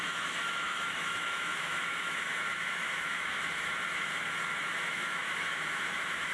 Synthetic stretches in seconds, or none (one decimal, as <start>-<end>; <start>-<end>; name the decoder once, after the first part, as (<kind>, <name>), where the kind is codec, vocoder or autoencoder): 0.0-4.1 (autoencoder, DAC-VAE); 4.6-6.3